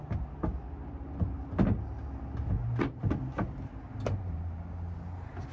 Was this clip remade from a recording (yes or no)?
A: no